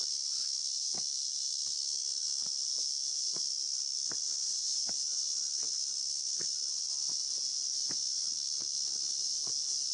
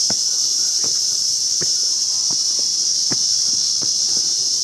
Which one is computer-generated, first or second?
second